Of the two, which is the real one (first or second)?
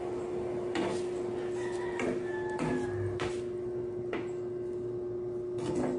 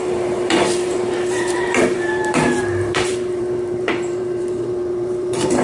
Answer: first